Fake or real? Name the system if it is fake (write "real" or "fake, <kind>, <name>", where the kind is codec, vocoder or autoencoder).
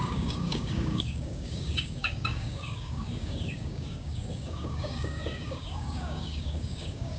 fake, codec, DAC